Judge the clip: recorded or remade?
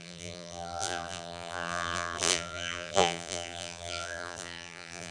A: remade